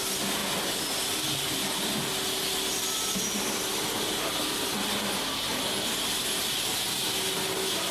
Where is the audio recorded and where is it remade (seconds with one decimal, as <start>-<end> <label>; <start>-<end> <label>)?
0.0-7.9 recorded